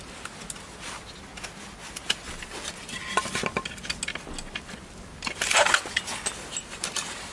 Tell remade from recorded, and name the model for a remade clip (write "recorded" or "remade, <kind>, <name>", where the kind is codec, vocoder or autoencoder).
recorded